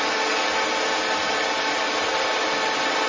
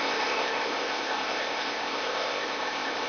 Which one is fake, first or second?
second